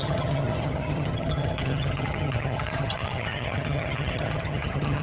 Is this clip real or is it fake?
fake